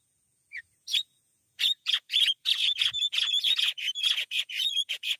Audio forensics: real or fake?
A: fake